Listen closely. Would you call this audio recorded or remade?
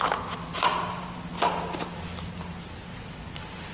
recorded